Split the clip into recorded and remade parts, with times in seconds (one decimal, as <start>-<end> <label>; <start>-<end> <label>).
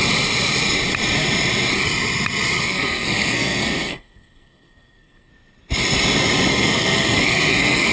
0.0-2.6 recorded; 2.6-5.3 remade; 5.3-6.5 recorded; 6.5-7.9 remade